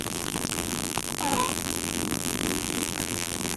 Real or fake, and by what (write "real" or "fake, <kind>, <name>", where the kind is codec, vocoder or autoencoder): fake, vocoder, BigVGAN v2